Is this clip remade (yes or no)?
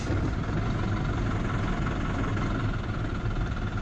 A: no